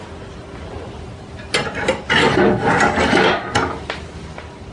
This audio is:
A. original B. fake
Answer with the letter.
A